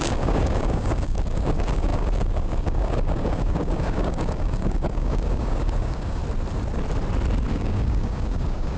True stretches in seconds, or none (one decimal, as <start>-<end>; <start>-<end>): 6.2-7.5